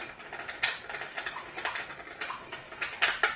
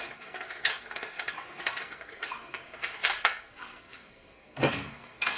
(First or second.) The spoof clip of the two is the second